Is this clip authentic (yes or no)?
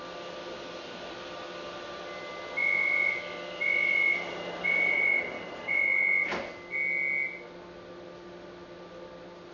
yes